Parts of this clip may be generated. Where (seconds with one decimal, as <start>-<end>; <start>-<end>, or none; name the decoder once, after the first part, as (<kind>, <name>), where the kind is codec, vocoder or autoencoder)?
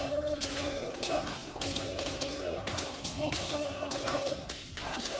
0.0-5.2 (codec, SNAC)